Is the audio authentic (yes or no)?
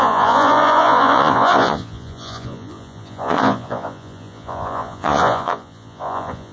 no